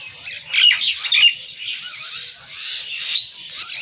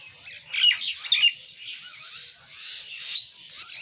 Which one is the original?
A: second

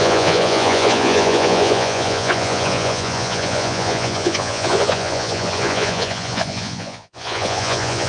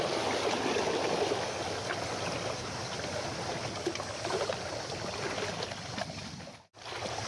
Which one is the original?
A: second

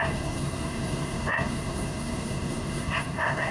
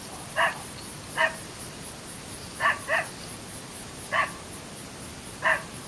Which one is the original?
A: second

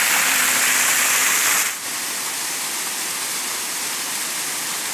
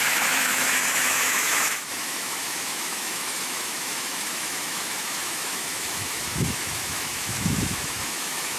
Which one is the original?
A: first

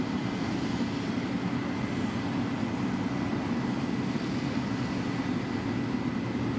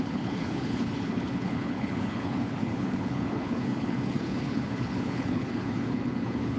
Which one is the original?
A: first